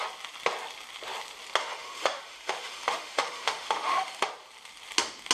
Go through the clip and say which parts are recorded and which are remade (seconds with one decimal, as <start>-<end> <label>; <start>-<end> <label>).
0.0-1.6 recorded; 1.6-4.3 remade; 4.3-5.3 recorded